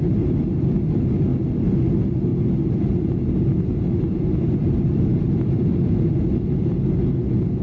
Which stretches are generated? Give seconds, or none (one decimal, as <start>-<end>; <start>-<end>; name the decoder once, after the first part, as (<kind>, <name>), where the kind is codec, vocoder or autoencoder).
none